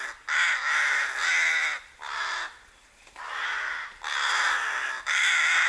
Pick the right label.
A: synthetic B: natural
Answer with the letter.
B